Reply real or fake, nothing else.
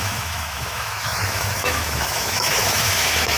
fake